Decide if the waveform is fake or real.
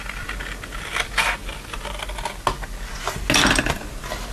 real